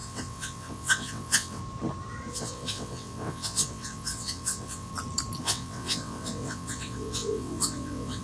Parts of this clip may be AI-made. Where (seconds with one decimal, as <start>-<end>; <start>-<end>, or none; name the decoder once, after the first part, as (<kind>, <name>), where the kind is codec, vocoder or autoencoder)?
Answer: 0.0-1.6 (vocoder, WaveNeXt); 2.3-4.9; 5.4-8.2